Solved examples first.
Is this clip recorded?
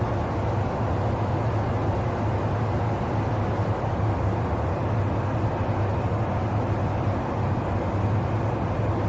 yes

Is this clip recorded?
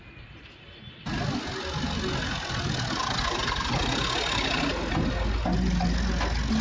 yes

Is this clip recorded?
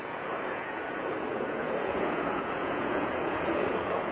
no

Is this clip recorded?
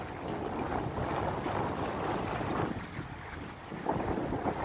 yes